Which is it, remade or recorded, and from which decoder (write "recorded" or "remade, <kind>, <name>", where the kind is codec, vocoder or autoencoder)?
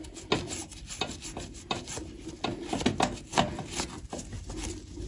recorded